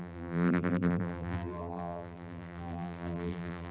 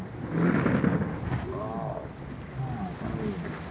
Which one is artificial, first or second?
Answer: first